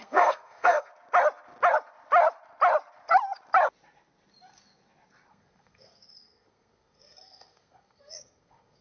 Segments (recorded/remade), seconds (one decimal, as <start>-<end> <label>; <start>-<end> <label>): 0.0-0.9 remade; 0.9-5.3 recorded; 5.3-8.8 remade

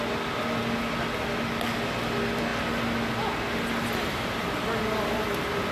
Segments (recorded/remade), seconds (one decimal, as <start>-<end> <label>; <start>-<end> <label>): 0.0-5.7 recorded

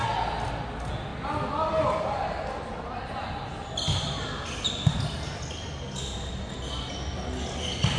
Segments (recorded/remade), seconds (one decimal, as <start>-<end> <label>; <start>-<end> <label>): 0.0-8.0 recorded